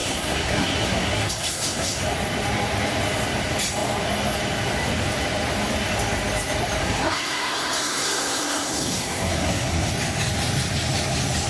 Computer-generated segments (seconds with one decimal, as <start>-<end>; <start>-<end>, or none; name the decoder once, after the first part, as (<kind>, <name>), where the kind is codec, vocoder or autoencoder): 0.0-2.0 (codec, SNAC); 6.8-9.9